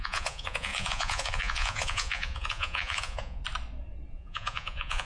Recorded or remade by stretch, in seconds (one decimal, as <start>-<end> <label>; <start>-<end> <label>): 0.0-3.4 remade; 3.4-4.1 recorded; 4.1-5.1 remade